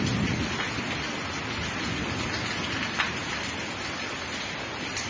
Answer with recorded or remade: recorded